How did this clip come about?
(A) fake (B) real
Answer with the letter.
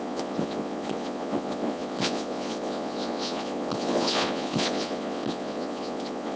A